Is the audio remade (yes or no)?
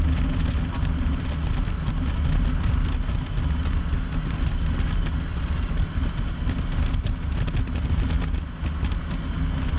no